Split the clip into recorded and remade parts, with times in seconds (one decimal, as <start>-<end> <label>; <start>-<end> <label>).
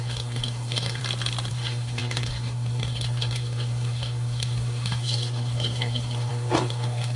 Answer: 0.0-1.0 remade; 1.0-1.5 recorded; 1.5-7.2 remade